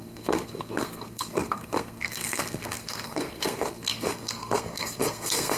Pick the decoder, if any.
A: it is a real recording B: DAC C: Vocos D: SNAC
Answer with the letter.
D